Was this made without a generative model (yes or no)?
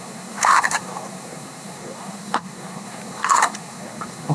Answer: no